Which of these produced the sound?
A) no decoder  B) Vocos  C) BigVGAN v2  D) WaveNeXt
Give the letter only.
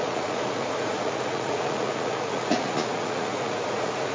B